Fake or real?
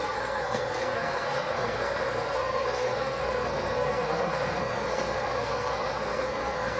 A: fake